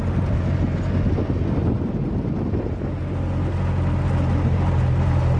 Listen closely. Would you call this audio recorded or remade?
recorded